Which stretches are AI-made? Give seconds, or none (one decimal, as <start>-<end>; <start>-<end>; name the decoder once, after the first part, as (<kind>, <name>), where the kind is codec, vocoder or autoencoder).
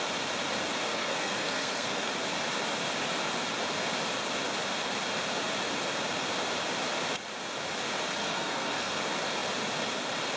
0.9-2.1 (codec, SNAC); 8.2-9.0